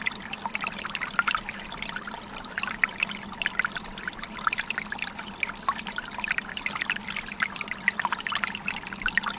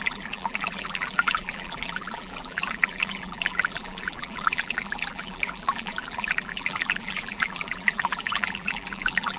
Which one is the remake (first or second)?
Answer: second